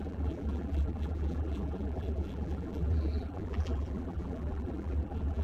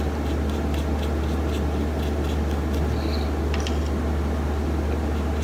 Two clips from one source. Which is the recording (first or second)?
second